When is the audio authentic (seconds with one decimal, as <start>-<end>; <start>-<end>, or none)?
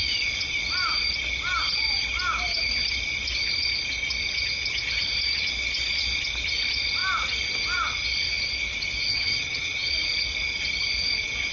0.0-9.1; 9.9-11.5